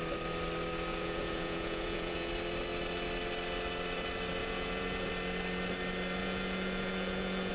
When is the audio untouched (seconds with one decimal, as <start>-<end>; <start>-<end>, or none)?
0.0-0.9; 2.3-4.4; 5.1-6.2